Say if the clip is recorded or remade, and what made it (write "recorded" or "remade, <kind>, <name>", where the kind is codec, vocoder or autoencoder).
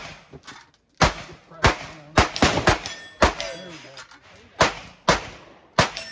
recorded